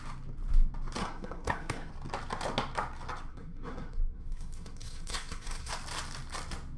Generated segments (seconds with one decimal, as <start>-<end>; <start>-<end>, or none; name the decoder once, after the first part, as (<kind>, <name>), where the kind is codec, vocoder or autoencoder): 1.0-1.9 (codec, SNAC); 3.3-5.7